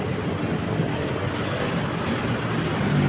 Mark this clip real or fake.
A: real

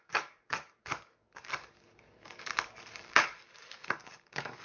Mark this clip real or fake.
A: fake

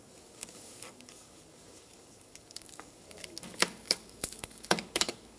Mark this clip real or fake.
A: fake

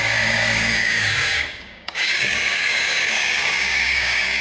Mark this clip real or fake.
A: fake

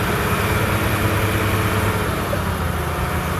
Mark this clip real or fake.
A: real